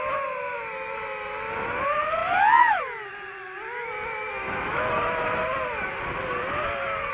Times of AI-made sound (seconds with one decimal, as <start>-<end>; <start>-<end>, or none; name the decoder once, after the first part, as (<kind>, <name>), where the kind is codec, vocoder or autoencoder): 4.4-5.1 (autoencoder, DAC-VAE)